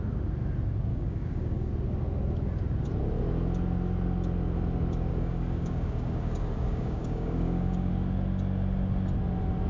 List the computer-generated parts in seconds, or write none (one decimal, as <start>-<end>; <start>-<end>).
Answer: 0.9-1.7; 5.1-7.9

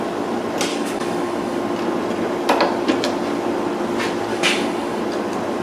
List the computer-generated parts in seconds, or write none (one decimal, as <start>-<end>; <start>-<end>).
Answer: 0.7-1.6; 4.3-5.0